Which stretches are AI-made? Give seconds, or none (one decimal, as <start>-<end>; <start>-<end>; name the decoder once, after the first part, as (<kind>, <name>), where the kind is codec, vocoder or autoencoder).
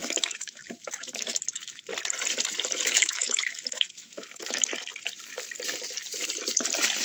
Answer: 0.0-1.9 (autoencoder, DAC-VAE); 2.8-4.7